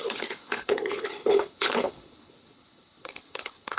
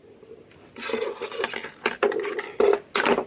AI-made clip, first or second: first